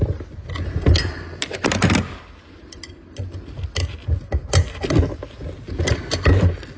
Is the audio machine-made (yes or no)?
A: no